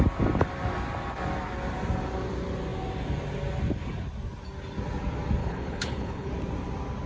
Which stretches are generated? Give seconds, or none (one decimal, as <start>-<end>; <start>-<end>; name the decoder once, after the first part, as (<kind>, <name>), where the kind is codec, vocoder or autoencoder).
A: 5.4-6.3 (codec, HILCodec)